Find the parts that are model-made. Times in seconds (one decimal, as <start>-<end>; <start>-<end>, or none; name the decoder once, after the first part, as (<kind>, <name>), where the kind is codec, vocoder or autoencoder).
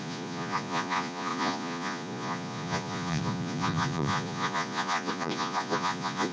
0.0-6.3 (vocoder, Vocos)